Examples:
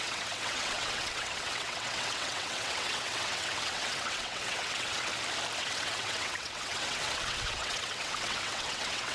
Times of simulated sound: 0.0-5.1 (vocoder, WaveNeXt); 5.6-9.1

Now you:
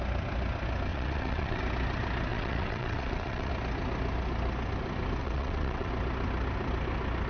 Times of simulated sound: 0.9-1.6 (vocoder, WaveNeXt); 2.3-3.5; 5.2-5.9

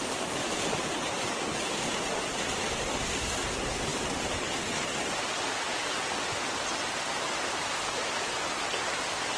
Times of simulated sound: none